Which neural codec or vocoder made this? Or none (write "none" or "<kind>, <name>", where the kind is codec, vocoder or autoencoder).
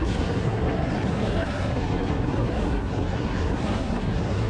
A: codec, SNAC